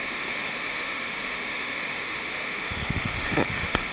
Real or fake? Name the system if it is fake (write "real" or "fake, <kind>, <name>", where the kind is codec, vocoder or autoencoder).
fake, autoencoder, DAC-VAE